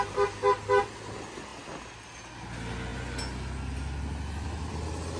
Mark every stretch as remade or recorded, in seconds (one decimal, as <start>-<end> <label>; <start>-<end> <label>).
0.0-5.2 recorded